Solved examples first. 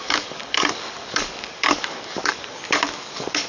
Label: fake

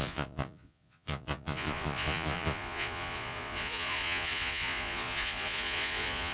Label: fake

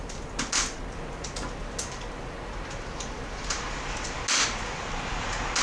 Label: real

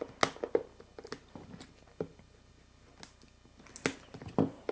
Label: real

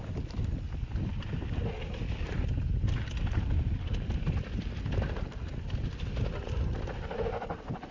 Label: real